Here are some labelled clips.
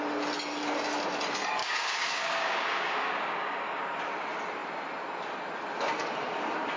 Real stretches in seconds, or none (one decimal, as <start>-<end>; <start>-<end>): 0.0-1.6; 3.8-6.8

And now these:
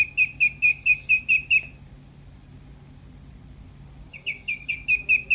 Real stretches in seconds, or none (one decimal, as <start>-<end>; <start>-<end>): 0.0-0.7; 1.2-4.1; 4.7-5.3

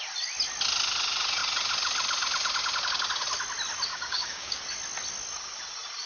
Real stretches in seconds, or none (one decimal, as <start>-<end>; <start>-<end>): 0.0-3.9; 4.6-6.1

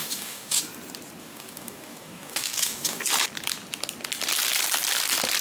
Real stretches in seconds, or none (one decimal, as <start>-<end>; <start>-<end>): 0.6-1.2; 3.0-5.4

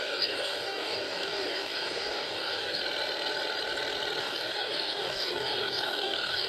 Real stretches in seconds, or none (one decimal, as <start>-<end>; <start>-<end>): 2.8-4.2

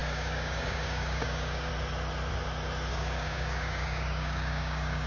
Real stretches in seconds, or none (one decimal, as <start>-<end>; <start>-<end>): 1.7-2.9

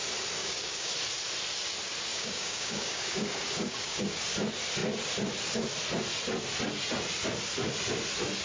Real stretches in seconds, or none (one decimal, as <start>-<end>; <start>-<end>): 0.0-0.4; 0.9-2.1; 4.2-8.4

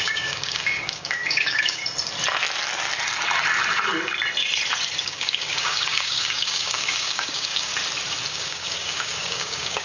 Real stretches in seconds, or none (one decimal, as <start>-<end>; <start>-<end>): 1.8-5.0; 7.7-8.3